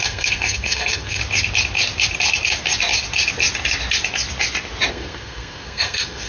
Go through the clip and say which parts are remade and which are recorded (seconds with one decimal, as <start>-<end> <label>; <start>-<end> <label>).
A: 0.0-1.2 remade; 1.2-4.9 recorded; 4.9-6.3 remade